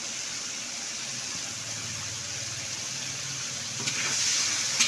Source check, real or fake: real